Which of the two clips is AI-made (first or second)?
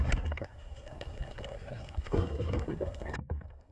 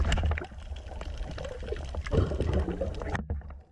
first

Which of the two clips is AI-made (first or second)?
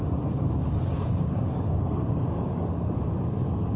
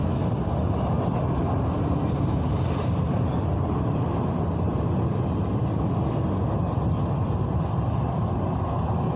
first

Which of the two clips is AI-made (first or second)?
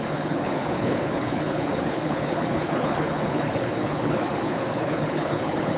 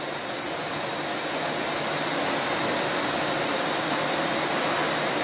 first